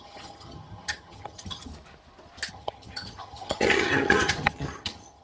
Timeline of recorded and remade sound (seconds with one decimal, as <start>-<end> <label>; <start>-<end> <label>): 0.0-1.7 remade; 1.7-2.5 recorded; 2.5-5.2 remade